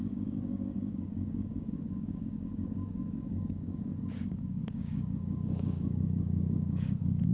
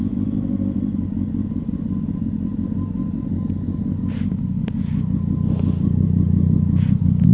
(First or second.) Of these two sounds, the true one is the second